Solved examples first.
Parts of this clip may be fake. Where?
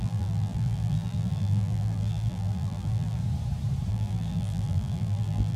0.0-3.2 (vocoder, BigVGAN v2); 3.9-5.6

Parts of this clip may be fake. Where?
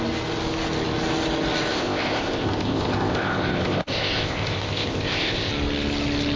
1.7-5.5 (codec, ZipCodec)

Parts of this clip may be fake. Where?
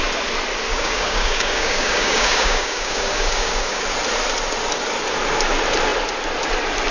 0.7-3.8 (codec, DAC)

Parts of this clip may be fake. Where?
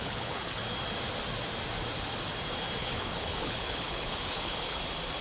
0.0-0.6 (codec, HILCodec); 2.8-4.8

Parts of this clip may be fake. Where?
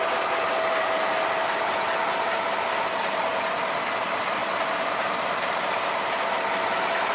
none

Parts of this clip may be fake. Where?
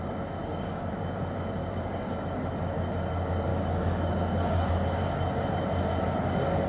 0.4-0.9 (codec, DAC); 1.6-2.2; 3.5-4.7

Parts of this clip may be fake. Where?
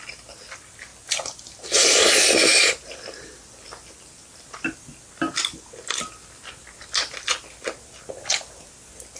none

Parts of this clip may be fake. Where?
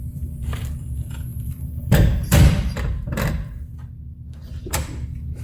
0.0-5.4 (vocoder, BigVGAN v2)